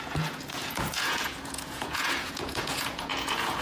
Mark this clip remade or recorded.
remade